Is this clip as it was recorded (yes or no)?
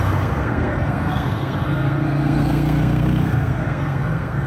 no